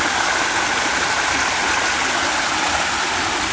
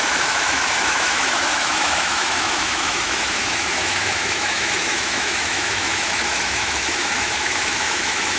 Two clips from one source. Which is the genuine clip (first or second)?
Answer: first